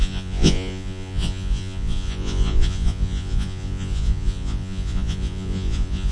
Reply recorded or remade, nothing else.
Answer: remade